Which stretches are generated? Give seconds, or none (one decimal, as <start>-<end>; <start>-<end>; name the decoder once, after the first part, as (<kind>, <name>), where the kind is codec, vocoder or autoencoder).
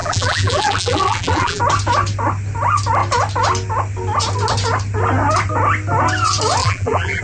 0.0-1.6 (vocoder, BigVGAN v2); 6.6-7.2